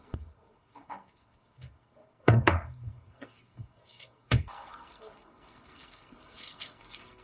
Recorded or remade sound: remade